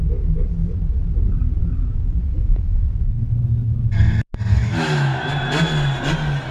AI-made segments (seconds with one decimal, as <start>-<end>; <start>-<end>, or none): 2.2-2.8; 4.5-5.3